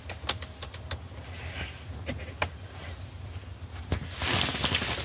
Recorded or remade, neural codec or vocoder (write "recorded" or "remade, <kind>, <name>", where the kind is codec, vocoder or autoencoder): recorded